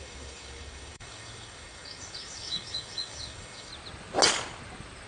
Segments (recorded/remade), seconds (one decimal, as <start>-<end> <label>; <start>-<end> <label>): 0.0-3.7 remade; 3.7-5.1 recorded